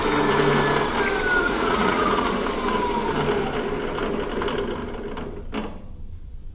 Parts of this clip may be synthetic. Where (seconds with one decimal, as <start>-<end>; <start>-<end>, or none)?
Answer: 1.4-2.3